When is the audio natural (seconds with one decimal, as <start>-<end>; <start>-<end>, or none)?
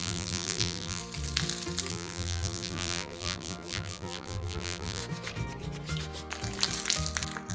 1.0-1.9; 5.0-7.5